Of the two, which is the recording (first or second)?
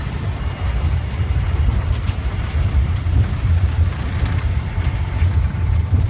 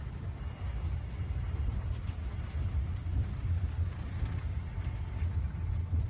second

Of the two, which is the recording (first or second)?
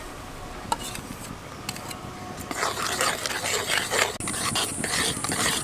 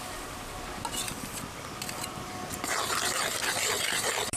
first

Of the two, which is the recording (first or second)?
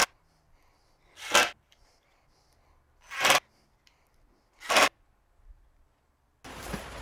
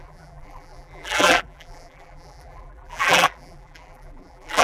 first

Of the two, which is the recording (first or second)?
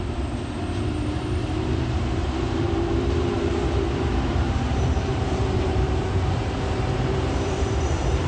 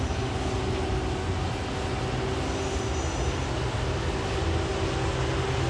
second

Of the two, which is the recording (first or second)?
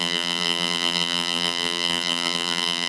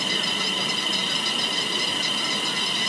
second